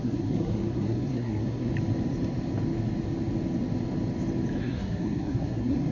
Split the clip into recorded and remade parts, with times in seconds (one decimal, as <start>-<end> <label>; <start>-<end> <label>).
0.0-1.7 remade; 1.7-4.6 recorded; 4.6-5.9 remade